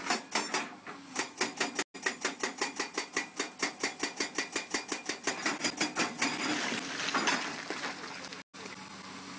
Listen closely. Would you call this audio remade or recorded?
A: recorded